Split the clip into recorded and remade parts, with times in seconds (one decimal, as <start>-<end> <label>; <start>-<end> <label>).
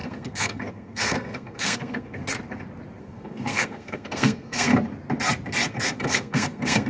0.0-2.2 remade; 2.2-3.0 recorded; 3.0-4.7 remade; 4.7-5.7 recorded; 5.7-6.9 remade